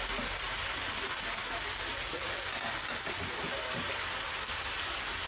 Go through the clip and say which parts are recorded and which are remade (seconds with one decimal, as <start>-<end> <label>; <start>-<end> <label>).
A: 0.0-5.3 recorded